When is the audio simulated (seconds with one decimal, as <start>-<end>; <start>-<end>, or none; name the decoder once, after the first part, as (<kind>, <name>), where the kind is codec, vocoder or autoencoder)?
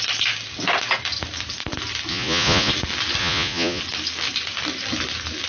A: 2.1-2.7 (vocoder, Vocos); 3.2-3.8